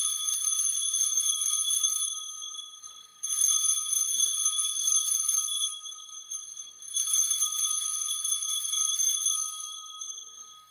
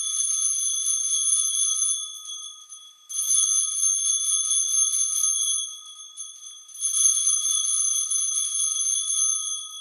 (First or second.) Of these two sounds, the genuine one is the second